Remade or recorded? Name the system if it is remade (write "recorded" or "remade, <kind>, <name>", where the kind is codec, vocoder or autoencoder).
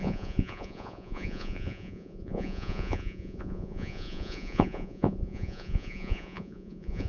remade, vocoder, Vocos